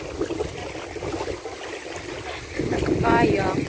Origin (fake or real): real